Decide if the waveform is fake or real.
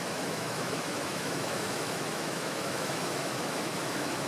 fake